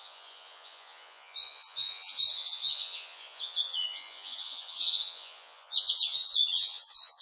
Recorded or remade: remade